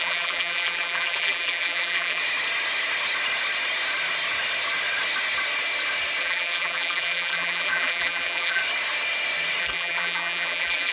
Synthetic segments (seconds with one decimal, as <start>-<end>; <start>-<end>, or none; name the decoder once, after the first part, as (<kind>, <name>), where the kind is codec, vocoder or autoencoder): 0.0-2.2 (vocoder, BigVGAN v2); 6.2-8.6; 9.6-10.9